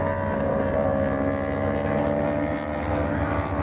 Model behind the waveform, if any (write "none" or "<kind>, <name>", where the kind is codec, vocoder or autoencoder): none